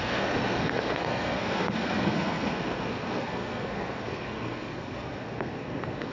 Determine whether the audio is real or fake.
fake